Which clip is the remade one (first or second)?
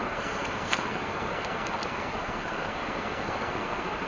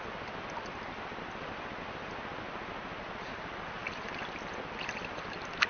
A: first